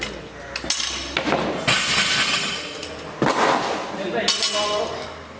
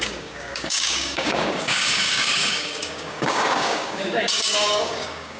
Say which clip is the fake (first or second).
second